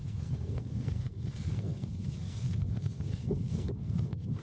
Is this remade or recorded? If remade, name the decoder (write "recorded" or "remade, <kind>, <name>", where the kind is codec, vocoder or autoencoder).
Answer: remade, codec, SNAC